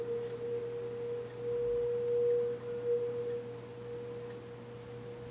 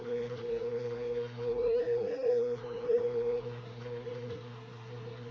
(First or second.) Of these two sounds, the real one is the first